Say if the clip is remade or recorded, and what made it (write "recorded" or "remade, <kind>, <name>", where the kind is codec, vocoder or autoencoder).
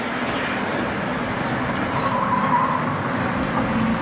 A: recorded